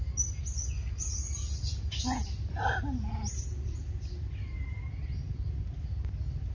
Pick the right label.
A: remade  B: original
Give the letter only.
B